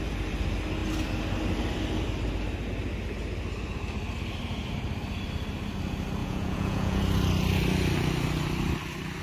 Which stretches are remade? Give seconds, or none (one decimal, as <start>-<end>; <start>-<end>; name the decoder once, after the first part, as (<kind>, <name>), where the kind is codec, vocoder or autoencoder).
6.2-7.0 (vocoder, Vocos)